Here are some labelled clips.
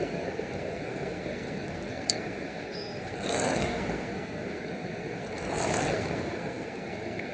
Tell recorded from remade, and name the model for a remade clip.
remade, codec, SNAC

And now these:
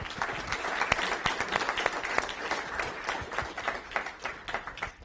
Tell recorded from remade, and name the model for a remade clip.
recorded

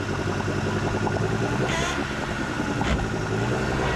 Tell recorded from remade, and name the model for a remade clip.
recorded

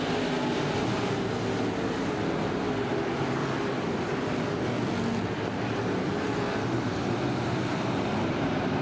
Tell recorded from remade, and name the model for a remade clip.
recorded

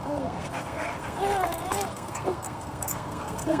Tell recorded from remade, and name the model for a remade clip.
remade, codec, SNAC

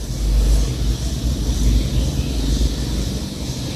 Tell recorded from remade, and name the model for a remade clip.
recorded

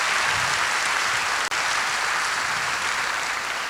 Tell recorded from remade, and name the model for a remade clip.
recorded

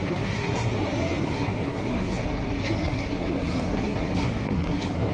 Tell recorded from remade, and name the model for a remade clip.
remade, codec, SNAC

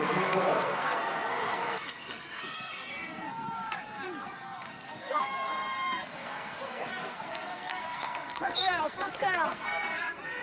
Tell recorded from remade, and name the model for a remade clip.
remade, codec, SNAC